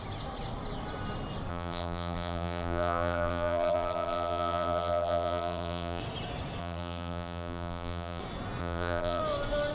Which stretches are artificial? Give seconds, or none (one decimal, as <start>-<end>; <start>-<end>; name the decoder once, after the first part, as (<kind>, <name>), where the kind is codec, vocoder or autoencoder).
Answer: 1.5-6.0 (vocoder, BigVGAN v2); 6.6-8.2; 8.6-9.2